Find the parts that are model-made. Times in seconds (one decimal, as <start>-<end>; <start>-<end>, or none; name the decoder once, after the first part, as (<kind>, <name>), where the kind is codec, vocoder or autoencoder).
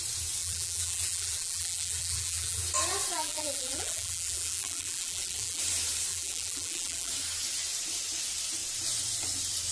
0.4-2.6 (vocoder, BigVGAN v2); 3.1-5.6; 6.1-7.1